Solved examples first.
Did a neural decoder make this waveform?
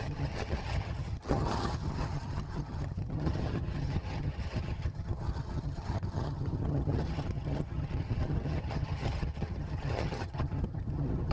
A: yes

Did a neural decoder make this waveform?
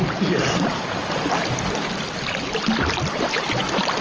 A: no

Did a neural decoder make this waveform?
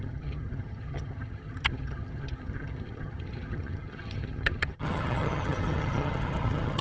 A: yes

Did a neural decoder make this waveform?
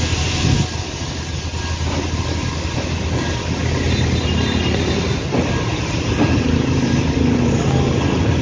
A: no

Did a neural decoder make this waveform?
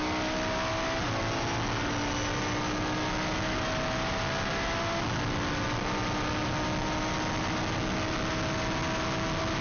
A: no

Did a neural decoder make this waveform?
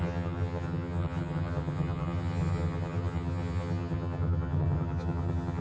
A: yes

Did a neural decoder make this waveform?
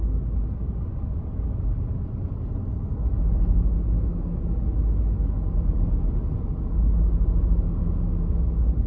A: no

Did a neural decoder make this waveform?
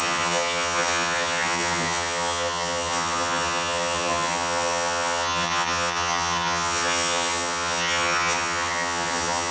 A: yes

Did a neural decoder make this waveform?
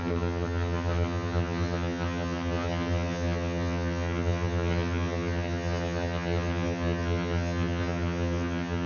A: yes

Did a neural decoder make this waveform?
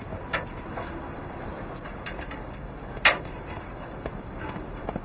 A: no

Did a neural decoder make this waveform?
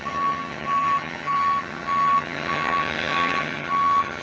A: yes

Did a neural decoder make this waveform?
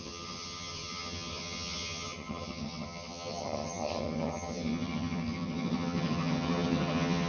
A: yes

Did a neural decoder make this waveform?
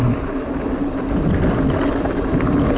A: no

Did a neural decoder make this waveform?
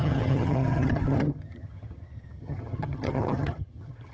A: yes